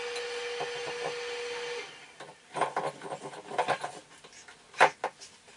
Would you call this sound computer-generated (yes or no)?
no